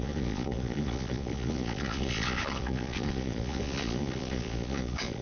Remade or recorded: remade